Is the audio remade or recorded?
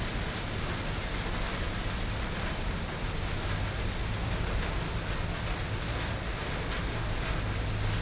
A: recorded